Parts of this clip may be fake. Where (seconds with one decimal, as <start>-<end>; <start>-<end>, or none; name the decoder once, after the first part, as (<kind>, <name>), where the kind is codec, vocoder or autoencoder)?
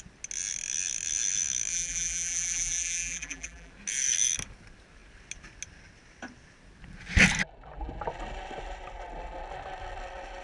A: 1.7-3.7 (vocoder, BigVGAN v2)